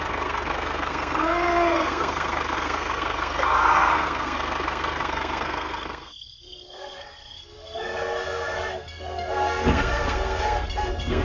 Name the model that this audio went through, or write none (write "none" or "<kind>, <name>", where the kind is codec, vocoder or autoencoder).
codec, SNAC